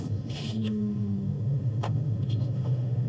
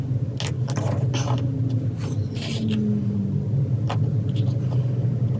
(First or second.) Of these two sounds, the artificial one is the first